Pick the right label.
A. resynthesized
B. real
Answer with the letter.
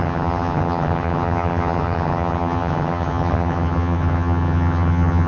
A